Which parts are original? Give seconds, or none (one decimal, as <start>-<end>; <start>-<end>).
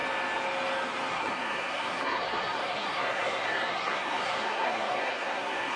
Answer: 0.0-1.1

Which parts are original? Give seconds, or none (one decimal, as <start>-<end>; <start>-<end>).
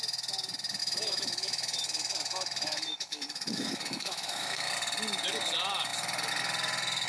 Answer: 0.0-0.8; 4.7-7.1